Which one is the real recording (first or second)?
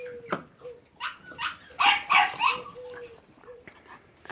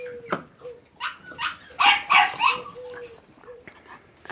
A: second